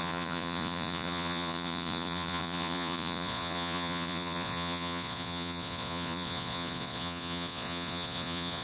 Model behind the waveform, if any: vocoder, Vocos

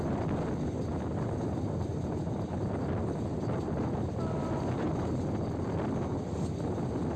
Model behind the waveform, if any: none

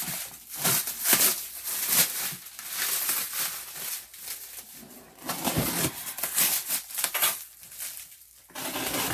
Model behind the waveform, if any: none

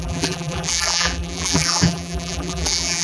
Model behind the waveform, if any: vocoder, BigVGAN v2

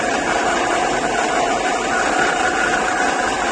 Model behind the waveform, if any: none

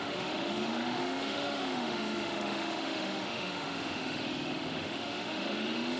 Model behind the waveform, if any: autoencoder, DAC-VAE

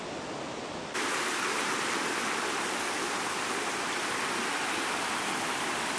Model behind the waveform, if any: none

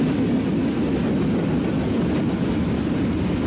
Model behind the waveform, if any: none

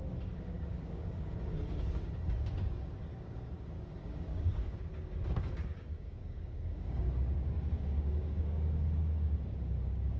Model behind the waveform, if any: codec, DAC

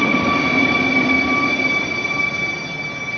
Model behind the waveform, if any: none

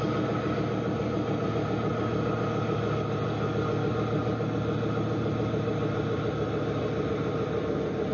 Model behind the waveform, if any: none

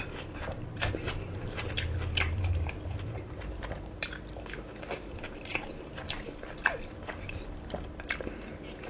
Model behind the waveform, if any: vocoder, BigVGAN v2